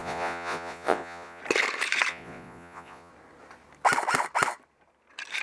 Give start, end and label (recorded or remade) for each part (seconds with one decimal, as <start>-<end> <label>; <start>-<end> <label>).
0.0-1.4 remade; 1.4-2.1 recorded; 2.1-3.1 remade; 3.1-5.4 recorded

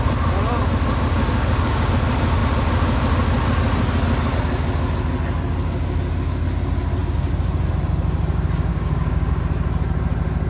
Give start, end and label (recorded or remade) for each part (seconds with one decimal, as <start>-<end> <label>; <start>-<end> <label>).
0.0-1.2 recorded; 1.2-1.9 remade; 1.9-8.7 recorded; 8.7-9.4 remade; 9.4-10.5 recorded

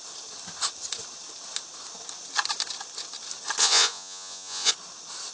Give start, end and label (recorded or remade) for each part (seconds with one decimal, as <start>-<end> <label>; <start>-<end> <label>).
0.0-3.6 recorded; 3.6-4.7 remade; 4.7-5.3 recorded